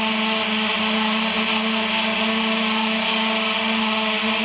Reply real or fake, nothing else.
real